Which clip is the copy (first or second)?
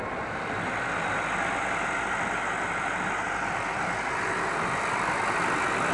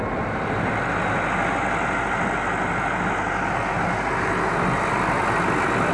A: first